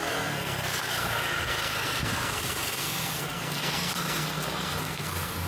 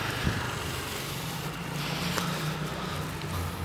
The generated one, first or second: first